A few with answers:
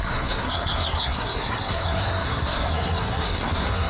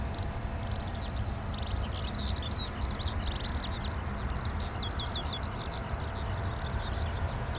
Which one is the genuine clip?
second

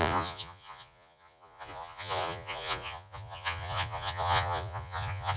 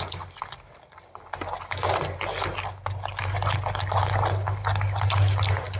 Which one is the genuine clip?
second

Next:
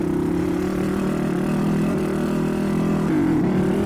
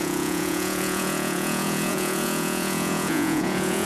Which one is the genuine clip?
first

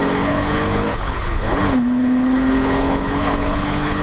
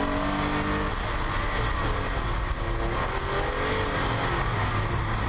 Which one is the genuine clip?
second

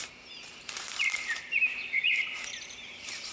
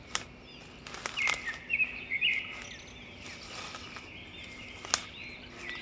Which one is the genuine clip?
second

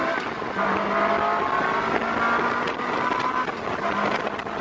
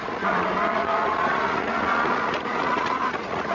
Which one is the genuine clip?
first